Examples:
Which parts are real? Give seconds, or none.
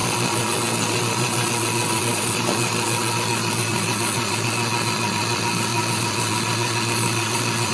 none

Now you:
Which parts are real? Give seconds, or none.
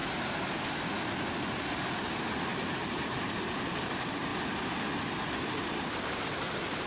0.0-2.5; 4.3-5.7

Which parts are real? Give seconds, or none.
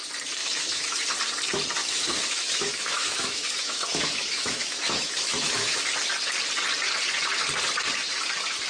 0.0-0.4; 1.0-1.8; 5.8-8.7